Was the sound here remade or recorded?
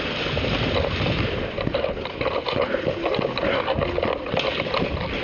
recorded